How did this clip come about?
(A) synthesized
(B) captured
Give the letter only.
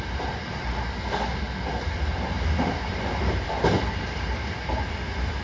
A